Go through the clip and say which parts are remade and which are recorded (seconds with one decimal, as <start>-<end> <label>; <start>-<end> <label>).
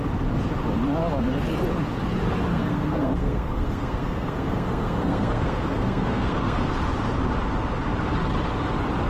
0.0-2.5 recorded; 2.5-6.7 remade; 6.7-9.1 recorded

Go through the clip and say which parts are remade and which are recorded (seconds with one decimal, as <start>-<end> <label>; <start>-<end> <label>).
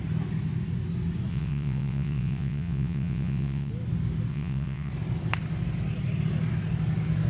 0.0-1.3 recorded; 1.3-3.7 remade; 3.7-4.3 recorded; 4.3-4.9 remade; 4.9-7.3 recorded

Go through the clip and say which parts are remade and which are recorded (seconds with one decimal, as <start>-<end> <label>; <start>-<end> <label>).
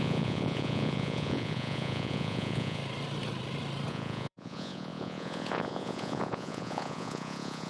0.0-2.8 remade; 2.8-3.9 recorded; 3.9-7.7 remade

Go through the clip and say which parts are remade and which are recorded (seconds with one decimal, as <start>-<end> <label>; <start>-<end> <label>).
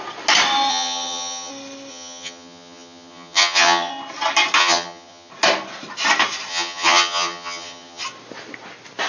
0.0-0.7 recorded; 0.7-1.5 remade; 1.5-1.9 recorded; 1.9-3.9 remade; 3.9-4.6 recorded; 4.6-5.3 remade; 5.3-6.5 recorded; 6.5-8.0 remade; 8.0-9.1 recorded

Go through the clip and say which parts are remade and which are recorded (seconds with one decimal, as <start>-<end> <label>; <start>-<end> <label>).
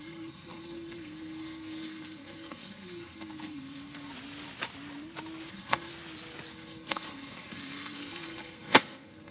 0.0-4.1 remade; 4.1-5.5 recorded; 5.5-5.9 remade; 5.9-6.5 recorded; 6.5-9.3 remade